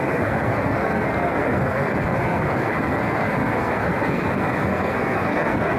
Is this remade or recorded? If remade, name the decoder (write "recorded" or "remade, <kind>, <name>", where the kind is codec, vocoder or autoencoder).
remade, codec, SNAC